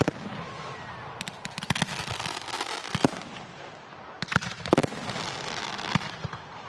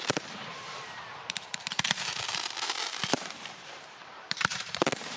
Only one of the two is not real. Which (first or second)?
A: second